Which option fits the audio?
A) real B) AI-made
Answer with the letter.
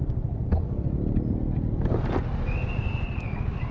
A